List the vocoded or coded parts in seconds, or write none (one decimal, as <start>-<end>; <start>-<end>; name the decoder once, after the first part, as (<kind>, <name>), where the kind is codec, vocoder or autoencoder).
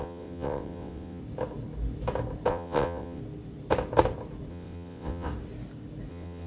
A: 0.0-1.2 (vocoder, WaveNeXt); 2.5-3.2; 4.5-5.3; 6.1-6.5